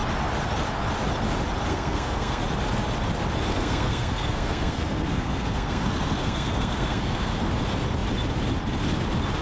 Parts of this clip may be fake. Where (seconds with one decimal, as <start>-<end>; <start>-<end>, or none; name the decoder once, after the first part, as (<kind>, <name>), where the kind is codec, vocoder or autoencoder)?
1.7-2.4 (codec, SNAC); 3.5-7.5